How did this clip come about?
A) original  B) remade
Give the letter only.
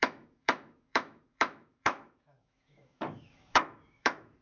B